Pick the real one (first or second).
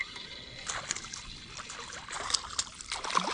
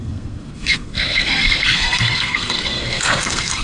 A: first